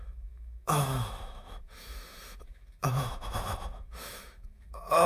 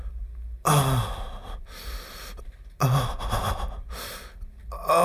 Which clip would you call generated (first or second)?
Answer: first